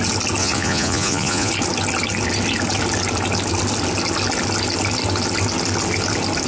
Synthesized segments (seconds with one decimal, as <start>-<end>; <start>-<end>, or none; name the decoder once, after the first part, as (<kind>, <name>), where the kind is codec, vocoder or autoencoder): 0.4-1.5 (vocoder, Vocos)